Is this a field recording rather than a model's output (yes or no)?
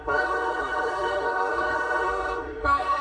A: no